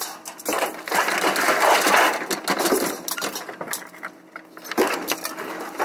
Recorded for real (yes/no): yes